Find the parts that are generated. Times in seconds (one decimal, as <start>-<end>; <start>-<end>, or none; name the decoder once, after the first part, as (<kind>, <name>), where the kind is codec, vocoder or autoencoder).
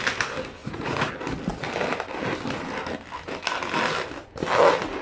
0.6-1.1 (vocoder, Vocos)